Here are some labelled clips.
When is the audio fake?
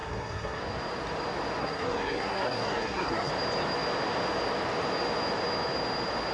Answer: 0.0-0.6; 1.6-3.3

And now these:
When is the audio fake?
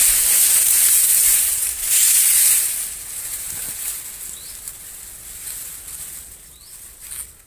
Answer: 1.2-2.7